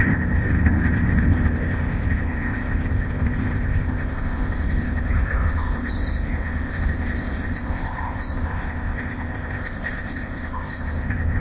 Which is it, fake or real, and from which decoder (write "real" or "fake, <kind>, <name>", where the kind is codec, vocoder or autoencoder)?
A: fake, codec, ZipCodec